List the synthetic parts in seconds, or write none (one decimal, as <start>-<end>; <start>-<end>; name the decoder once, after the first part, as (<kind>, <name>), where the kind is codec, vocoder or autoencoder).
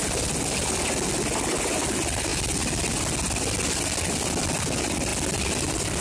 none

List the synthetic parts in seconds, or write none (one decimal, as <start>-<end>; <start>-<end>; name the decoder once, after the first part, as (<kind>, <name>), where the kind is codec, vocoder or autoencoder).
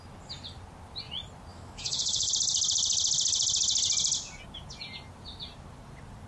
1.5-2.3 (autoencoder, DAC-VAE)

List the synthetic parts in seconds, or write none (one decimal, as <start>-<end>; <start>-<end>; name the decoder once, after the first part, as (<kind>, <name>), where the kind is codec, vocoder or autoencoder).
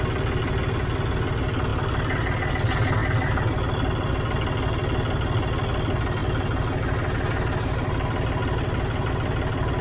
none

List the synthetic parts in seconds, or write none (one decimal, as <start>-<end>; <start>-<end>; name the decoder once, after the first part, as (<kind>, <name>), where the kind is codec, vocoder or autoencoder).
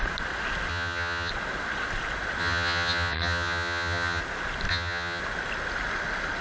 0.7-1.3 (vocoder, HiFi-GAN); 2.4-4.2; 4.7-5.2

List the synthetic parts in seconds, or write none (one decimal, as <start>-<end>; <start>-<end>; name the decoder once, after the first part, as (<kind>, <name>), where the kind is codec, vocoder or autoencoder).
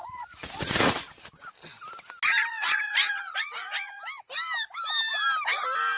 0.0-1.3 (vocoder, Vocos); 2.5-4.0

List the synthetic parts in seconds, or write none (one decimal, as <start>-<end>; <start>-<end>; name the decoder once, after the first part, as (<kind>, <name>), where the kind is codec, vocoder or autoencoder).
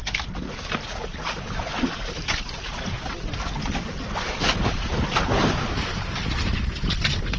none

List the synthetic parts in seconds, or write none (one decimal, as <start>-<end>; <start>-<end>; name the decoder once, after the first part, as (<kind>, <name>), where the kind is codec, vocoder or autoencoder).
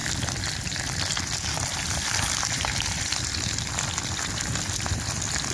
0.0-5.5 (vocoder, BigVGAN v2)